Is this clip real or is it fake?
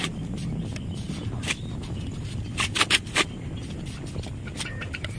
real